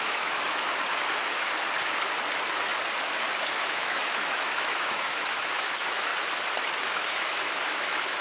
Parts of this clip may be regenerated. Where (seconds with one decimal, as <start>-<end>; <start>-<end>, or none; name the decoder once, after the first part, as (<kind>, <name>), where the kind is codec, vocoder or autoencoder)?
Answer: 0.0-0.7 (autoencoder, DAC-VAE); 3.6-6.1; 6.9-8.2